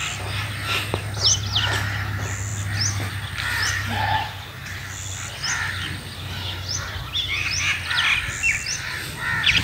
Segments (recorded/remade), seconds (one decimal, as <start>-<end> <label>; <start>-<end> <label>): 0.0-9.6 recorded